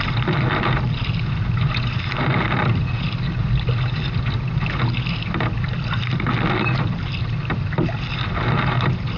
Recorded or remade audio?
recorded